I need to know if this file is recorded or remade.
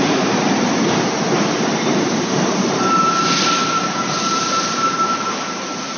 remade